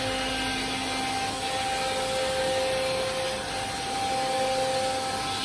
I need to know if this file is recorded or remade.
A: recorded